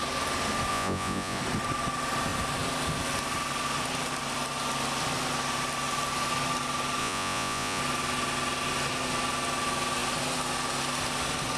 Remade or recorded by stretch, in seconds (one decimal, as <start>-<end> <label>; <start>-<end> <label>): 0.0-0.7 recorded; 0.7-1.4 remade; 1.4-7.0 recorded; 7.0-7.8 remade; 7.8-11.6 recorded